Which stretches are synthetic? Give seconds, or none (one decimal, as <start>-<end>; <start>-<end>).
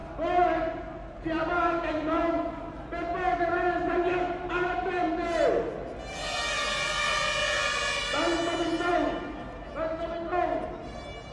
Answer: none